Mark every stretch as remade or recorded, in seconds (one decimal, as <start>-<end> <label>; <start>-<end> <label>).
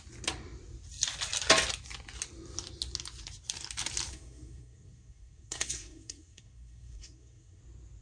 0.0-4.1 recorded; 4.1-7.6 remade; 7.6-8.0 recorded